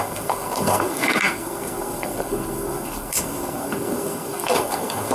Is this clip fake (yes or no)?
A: yes